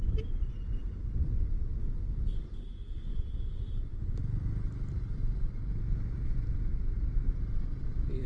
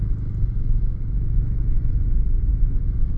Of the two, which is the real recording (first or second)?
second